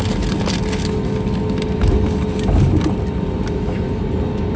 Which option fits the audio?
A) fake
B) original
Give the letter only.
B